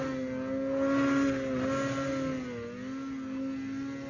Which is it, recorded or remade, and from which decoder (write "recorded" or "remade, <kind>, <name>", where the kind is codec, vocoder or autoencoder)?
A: recorded